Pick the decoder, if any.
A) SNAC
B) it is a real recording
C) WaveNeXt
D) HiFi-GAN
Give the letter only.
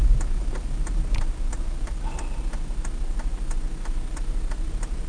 B